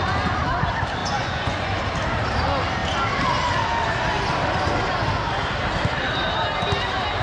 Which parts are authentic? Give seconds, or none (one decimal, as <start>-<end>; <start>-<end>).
0.0-1.0; 1.8-7.2